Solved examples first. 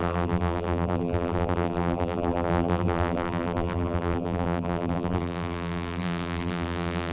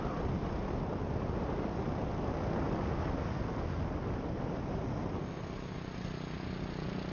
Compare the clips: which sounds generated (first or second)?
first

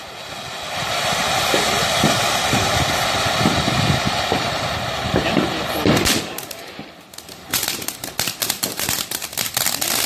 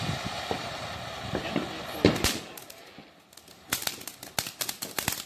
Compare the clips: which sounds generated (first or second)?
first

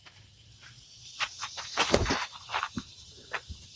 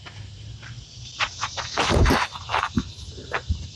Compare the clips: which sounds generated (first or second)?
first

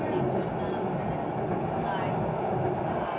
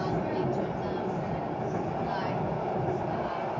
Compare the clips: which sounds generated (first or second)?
second